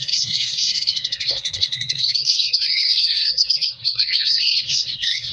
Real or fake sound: fake